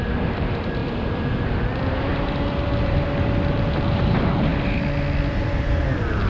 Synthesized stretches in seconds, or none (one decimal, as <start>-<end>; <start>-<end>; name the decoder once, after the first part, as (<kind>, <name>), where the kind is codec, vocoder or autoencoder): 0.8-1.5 (vocoder, BigVGAN v2); 2.1-3.0